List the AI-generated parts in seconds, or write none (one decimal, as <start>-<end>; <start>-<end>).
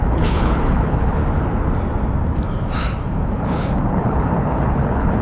0.0-1.2; 3.2-5.2